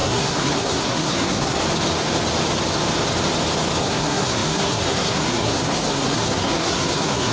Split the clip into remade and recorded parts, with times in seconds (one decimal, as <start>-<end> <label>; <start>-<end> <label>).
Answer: 0.0-1.6 remade; 1.6-3.8 recorded; 3.8-7.3 remade